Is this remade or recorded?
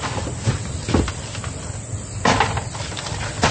recorded